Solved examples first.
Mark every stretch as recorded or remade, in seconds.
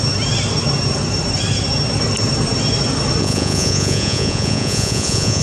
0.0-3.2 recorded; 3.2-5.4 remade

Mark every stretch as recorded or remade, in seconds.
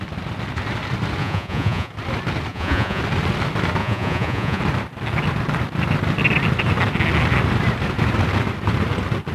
0.0-1.2 recorded; 1.2-1.9 remade; 1.9-2.5 recorded; 2.5-3.0 remade; 3.0-3.8 recorded; 3.8-4.6 remade; 4.6-9.3 recorded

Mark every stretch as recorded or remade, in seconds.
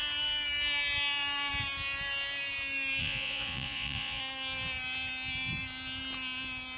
0.0-3.0 recorded; 3.0-4.2 remade; 4.2-6.8 recorded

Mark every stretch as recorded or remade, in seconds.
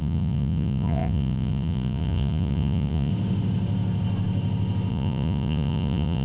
0.0-3.1 remade; 3.1-4.9 recorded; 4.9-6.2 remade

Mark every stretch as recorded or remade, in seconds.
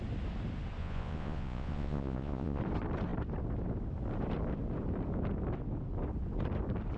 0.0-0.8 recorded; 0.8-2.6 remade; 2.6-7.0 recorded